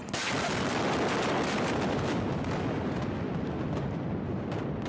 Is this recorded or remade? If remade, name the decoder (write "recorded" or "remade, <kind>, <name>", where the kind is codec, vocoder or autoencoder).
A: recorded